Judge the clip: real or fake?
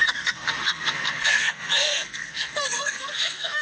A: fake